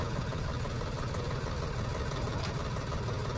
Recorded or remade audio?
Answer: recorded